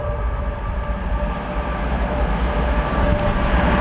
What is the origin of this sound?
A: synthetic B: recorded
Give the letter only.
B